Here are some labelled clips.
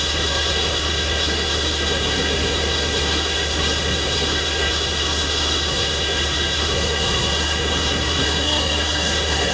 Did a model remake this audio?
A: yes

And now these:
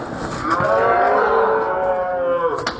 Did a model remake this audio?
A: no